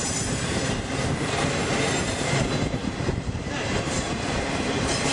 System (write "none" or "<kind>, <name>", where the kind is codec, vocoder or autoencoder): vocoder, BigVGAN v2